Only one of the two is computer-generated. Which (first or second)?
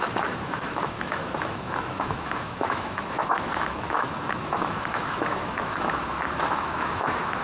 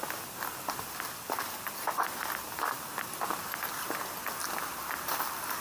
first